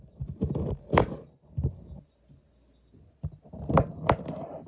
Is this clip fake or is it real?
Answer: real